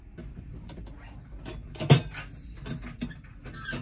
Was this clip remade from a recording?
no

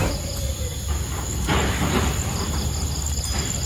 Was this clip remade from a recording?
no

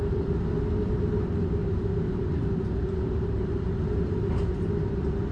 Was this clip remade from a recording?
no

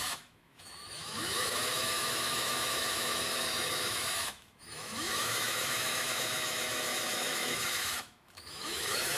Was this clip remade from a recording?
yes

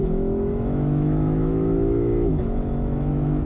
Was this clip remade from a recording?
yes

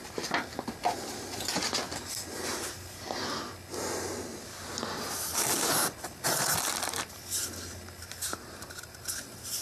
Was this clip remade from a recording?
no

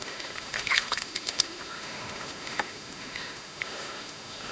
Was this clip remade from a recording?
yes